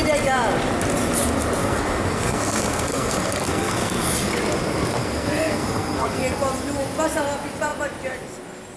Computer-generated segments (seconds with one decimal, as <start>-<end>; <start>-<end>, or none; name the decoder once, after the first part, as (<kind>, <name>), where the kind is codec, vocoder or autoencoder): 1.6-4.4 (codec, SNAC); 5.0-6.2